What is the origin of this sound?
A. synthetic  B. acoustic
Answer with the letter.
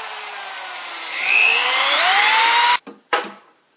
A